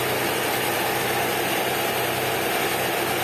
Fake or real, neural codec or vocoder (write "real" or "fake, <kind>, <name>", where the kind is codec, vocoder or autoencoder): real